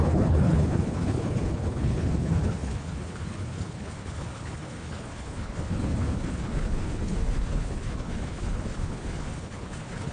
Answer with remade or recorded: remade